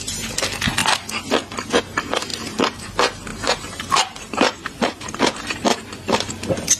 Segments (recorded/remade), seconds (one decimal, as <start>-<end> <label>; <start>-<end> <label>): 0.0-2.3 recorded; 2.3-2.9 remade; 2.9-3.3 recorded; 3.3-6.8 remade